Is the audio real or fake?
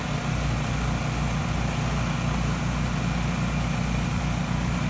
real